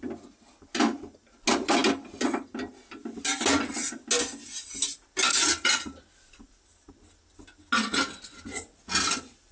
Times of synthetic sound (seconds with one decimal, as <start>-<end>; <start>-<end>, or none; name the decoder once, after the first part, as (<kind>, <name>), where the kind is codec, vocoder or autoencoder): 5.3-6.9 (vocoder, BigVGAN v2)